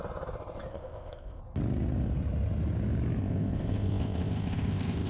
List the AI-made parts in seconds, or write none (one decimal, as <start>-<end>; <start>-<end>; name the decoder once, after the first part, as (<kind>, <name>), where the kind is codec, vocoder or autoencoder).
0.7-1.4 (codec, ZipCodec); 3.2-5.1